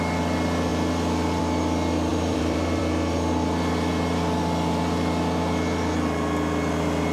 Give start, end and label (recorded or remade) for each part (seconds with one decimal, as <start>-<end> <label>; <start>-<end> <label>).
0.0-2.1 recorded; 2.1-2.8 remade; 2.8-7.1 recorded